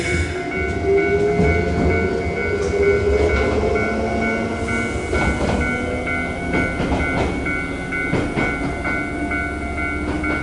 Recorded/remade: recorded